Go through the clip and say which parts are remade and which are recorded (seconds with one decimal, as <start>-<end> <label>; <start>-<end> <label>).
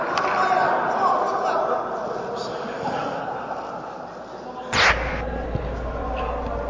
0.0-2.5 recorded; 2.5-3.2 remade; 3.2-6.7 recorded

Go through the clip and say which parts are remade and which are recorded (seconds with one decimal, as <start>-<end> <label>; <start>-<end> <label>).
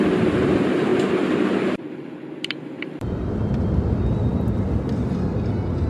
0.0-0.9 recorded; 0.9-3.4 remade; 3.4-5.9 recorded